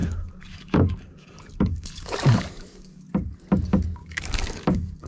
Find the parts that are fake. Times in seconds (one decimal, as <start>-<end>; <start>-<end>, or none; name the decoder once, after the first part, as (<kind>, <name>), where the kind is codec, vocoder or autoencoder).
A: 0.0-3.1 (codec, DAC); 4.0-5.1